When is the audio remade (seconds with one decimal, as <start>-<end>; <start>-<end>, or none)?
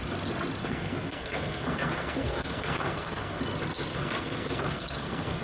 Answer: 0.6-3.4; 3.9-5.4